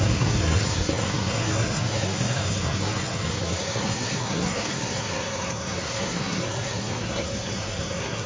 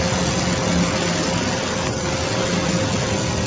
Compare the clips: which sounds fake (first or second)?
first